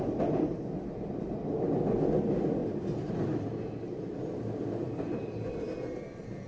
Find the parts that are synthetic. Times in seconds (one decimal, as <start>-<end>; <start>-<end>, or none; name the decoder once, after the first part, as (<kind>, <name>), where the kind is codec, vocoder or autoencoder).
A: none